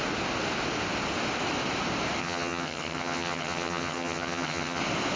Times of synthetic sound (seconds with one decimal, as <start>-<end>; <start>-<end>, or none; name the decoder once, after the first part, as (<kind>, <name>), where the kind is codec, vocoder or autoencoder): 2.2-4.8 (vocoder, HiFi-GAN)